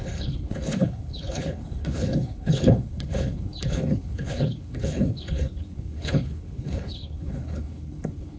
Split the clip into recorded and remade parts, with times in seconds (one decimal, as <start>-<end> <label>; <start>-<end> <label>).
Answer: 0.0-8.4 remade